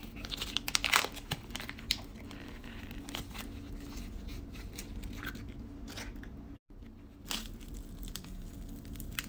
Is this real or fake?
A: real